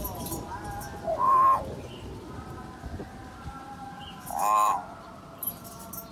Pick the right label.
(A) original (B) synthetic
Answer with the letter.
A